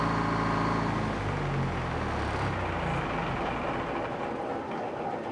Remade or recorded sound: recorded